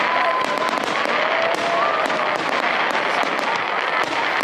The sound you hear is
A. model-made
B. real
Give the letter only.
B